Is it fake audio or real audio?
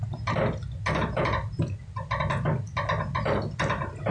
real